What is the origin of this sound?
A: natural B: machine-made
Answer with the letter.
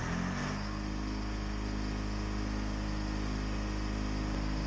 A